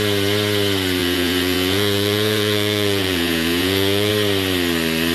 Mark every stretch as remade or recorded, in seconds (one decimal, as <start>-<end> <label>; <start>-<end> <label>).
0.0-1.0 recorded; 1.0-4.1 remade; 4.1-5.1 recorded